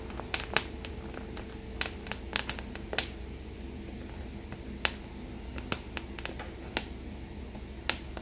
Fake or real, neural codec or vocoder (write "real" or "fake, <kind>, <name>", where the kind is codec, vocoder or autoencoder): real